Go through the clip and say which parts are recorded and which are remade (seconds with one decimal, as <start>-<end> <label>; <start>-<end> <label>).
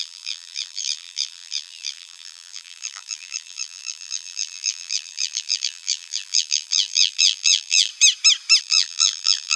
0.0-7.9 remade; 7.9-8.6 recorded; 8.6-9.6 remade